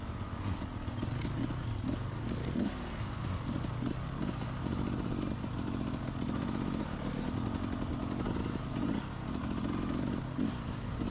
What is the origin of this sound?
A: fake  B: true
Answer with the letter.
B